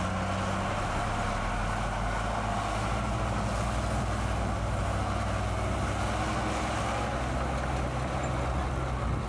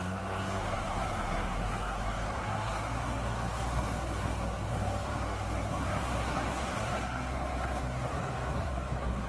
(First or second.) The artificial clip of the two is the second